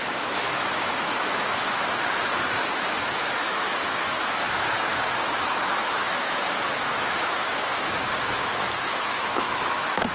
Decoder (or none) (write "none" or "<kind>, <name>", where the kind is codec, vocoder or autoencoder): autoencoder, DAC-VAE